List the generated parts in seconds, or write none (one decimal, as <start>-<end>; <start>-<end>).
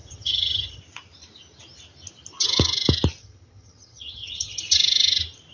0.0-0.8; 3.2-4.6